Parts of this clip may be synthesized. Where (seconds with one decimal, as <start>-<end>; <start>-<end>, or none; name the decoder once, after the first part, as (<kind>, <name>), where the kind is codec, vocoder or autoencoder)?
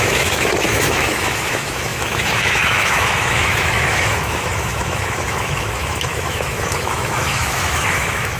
0.0-8.4 (autoencoder, DAC-VAE)